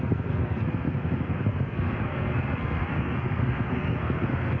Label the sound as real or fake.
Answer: fake